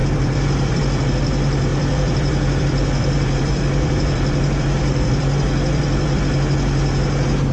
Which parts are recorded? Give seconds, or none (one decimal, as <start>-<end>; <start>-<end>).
0.8-1.7; 6.2-7.5